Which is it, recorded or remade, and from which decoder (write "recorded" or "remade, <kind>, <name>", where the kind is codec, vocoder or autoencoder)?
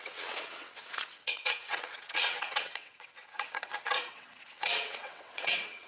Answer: remade, vocoder, WaveNeXt